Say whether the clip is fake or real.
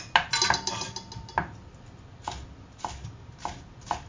real